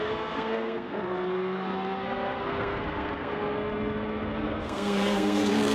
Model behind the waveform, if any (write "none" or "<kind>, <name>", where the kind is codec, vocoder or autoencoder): codec, SNAC